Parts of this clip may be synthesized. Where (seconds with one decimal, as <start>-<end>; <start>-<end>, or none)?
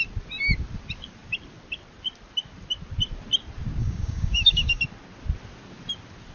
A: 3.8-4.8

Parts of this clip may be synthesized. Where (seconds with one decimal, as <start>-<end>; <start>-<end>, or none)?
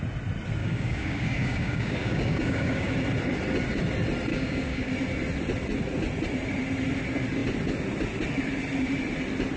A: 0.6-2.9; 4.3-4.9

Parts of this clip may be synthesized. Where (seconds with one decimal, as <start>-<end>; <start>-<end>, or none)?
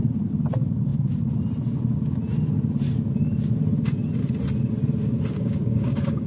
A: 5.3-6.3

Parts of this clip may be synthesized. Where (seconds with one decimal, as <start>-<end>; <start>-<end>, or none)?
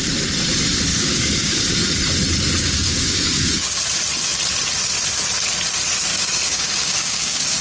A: 0.9-1.6; 2.6-3.8; 6.1-7.6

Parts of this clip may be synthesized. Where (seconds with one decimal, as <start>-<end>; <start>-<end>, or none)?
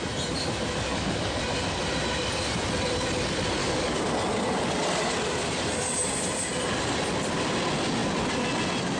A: 0.9-1.4; 3.6-4.1